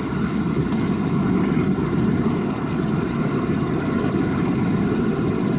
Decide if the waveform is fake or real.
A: real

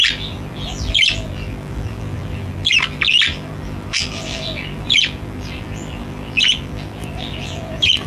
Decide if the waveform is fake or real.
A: fake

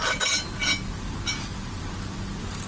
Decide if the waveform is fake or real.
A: real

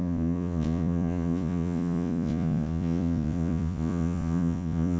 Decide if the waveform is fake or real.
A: fake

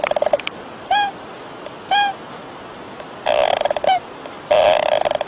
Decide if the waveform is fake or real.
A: real